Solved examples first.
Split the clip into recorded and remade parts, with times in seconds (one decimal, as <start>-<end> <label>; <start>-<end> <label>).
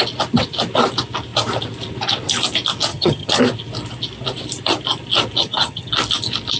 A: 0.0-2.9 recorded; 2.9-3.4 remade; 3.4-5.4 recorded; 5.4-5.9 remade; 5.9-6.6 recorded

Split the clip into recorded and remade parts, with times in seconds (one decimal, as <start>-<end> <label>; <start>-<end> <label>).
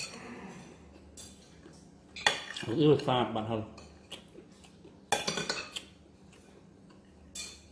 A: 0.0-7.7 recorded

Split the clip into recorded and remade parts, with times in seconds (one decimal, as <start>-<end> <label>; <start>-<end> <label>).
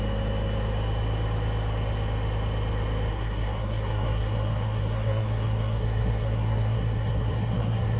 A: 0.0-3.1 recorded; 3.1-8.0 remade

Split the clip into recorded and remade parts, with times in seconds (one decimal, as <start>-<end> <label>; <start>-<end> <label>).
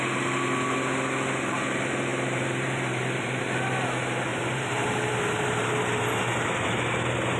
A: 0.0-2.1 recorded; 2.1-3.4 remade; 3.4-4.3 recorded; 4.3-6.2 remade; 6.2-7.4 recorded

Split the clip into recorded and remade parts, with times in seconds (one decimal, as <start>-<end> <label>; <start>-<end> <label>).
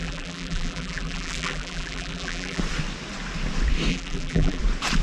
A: 0.0-2.6 remade; 2.6-3.9 recorded; 3.9-4.6 remade; 4.6-5.0 recorded